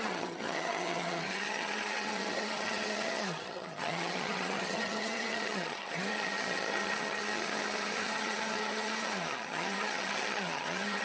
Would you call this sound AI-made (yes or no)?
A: yes